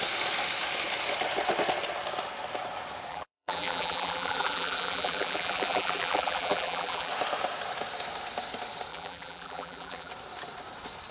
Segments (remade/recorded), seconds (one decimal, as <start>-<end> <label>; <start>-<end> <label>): 0.0-3.1 recorded; 3.1-7.1 remade; 7.1-8.9 recorded; 8.9-10.1 remade; 10.1-11.1 recorded